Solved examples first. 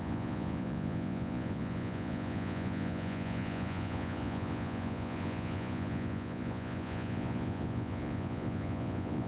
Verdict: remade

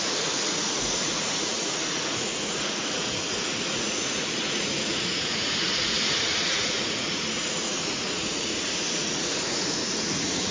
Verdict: remade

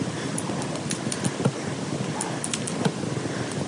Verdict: recorded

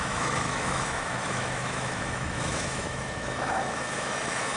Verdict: remade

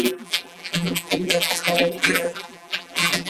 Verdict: remade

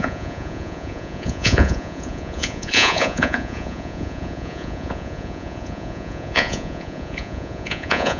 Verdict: remade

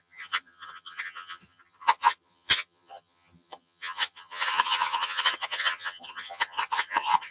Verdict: remade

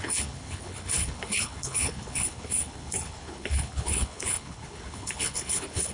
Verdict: remade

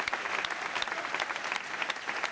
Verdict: recorded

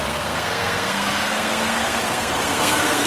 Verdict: remade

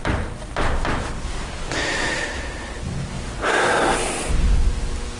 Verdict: recorded